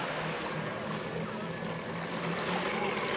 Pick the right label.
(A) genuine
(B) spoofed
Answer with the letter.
A